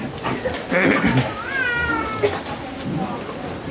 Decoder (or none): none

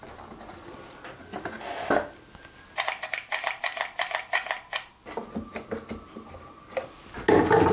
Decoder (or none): none